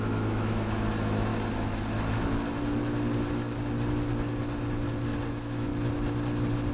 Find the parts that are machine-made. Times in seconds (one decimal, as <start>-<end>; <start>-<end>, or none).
0.0-1.3; 5.3-5.7